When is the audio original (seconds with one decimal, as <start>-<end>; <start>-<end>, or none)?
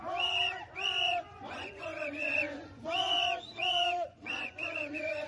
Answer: none